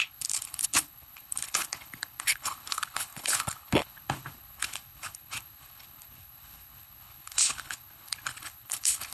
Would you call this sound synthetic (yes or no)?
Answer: yes